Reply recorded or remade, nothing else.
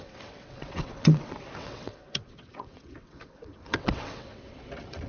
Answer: remade